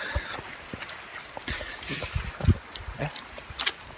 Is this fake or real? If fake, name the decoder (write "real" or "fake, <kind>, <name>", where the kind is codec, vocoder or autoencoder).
real